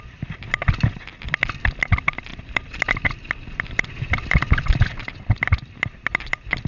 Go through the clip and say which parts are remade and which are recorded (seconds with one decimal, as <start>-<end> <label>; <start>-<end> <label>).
0.0-6.7 recorded